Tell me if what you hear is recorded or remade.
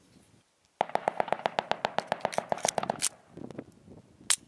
recorded